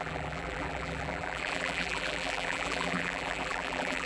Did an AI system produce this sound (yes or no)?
yes